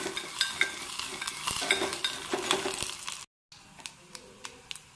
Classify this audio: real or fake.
real